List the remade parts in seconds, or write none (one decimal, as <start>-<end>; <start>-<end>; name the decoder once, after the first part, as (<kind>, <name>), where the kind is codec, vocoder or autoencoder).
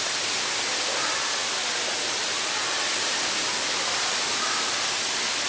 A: none